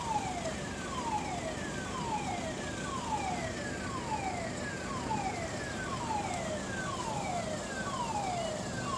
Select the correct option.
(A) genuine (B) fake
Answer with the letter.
A